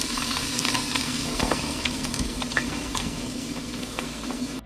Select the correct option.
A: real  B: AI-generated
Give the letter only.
B